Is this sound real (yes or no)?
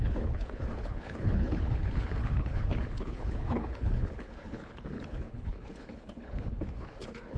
no